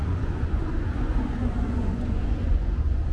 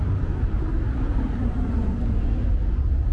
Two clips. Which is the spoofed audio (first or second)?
first